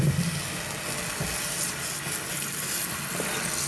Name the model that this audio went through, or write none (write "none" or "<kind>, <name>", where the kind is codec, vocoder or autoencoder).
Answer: none